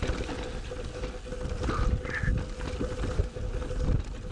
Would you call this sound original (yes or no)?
yes